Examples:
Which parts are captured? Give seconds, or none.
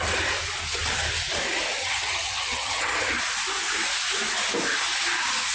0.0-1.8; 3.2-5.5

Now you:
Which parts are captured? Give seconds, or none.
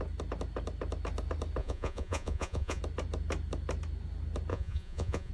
0.0-1.6; 2.8-4.5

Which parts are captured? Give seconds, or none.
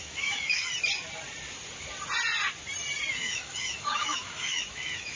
0.7-3.1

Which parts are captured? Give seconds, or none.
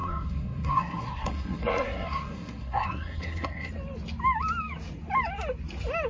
3.7-6.1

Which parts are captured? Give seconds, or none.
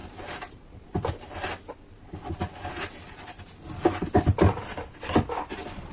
0.0-5.9